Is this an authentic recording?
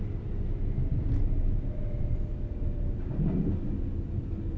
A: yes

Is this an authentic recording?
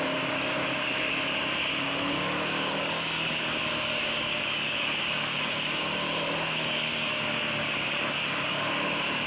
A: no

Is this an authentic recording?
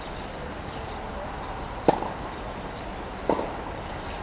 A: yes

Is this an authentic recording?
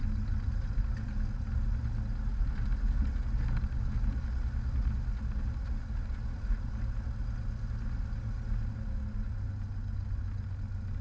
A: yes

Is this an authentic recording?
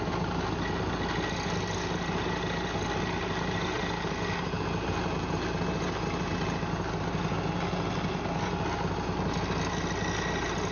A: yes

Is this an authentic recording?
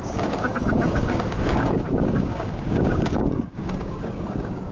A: no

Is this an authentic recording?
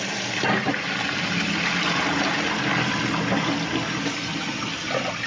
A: yes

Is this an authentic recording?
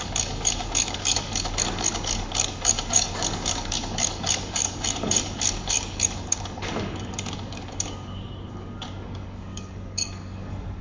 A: no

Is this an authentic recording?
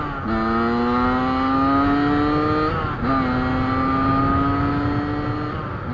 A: yes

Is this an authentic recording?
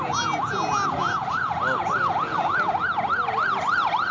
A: yes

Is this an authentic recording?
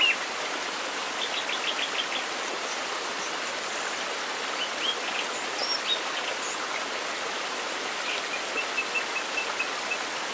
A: yes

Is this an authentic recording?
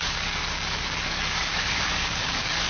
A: no